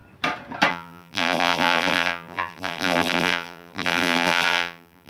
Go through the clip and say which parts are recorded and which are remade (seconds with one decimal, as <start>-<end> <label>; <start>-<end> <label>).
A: 0.0-0.7 recorded; 0.7-5.1 remade